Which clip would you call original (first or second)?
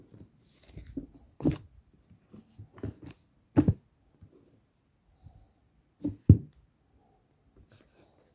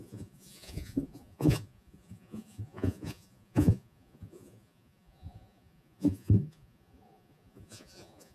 first